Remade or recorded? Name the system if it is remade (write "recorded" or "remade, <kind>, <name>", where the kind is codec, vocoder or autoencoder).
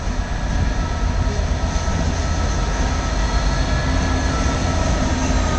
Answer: recorded